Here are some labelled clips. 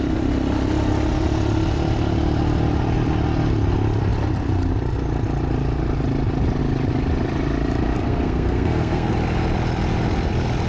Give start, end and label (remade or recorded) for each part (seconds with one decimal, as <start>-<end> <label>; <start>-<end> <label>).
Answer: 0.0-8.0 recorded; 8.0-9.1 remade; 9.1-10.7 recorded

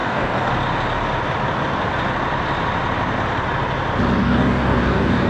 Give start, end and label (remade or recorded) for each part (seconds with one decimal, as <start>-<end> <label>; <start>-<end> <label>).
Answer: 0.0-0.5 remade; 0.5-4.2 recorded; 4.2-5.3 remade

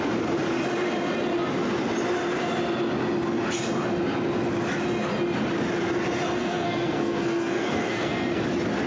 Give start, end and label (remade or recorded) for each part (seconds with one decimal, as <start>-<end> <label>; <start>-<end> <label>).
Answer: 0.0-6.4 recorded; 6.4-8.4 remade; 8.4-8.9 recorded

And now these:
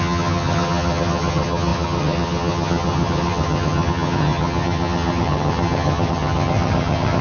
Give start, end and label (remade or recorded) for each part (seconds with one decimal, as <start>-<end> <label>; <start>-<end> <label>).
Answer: 0.0-7.2 remade

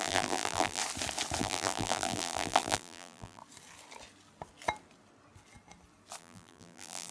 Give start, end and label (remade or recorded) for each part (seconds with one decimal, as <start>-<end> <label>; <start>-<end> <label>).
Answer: 0.0-0.8 remade; 0.8-1.4 recorded; 1.4-3.4 remade; 3.4-6.2 recorded; 6.2-7.1 remade

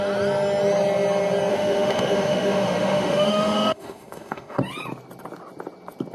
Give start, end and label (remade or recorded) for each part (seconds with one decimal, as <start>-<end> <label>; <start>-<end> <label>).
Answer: 0.0-1.5 recorded; 1.5-4.6 remade; 4.6-6.1 recorded